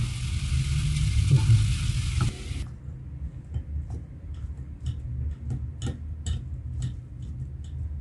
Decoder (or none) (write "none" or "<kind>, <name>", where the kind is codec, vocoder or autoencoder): none